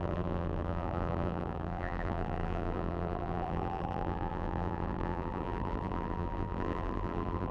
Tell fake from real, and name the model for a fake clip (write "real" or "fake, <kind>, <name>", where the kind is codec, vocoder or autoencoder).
fake, vocoder, BigVGAN v2